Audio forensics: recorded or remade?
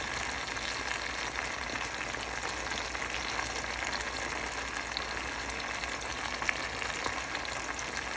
recorded